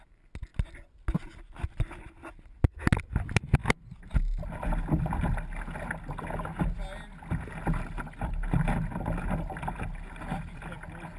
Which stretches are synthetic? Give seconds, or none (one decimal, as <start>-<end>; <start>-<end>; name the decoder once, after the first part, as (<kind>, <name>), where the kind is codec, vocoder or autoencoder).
none

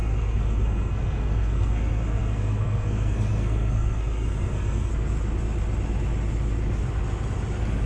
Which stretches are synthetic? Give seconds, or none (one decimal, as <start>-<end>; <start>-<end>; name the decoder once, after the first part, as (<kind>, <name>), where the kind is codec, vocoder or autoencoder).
0.0-4.9 (codec, SNAC)

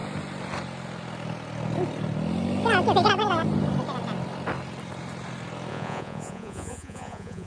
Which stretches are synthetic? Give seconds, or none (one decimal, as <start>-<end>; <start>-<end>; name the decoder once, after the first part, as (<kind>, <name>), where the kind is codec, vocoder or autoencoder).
5.7-7.5 (vocoder, Vocos)

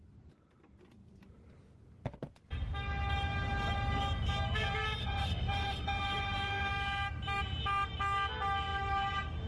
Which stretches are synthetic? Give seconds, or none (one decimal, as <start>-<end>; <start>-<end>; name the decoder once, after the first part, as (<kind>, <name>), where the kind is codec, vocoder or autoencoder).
5.0-6.7 (autoencoder, DAC-VAE)